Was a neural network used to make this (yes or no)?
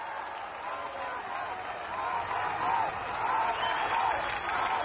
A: no